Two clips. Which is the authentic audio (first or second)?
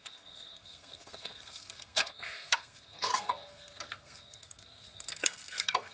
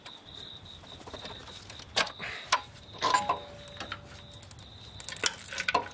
second